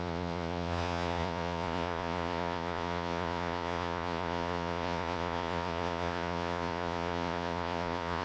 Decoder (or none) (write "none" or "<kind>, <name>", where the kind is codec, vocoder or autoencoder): vocoder, Vocos